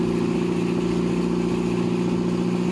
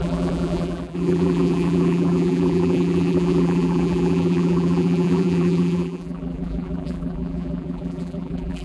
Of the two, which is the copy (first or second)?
second